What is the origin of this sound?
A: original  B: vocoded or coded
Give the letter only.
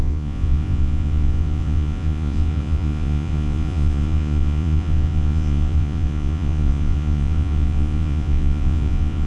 B